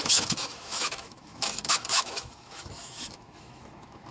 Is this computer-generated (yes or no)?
yes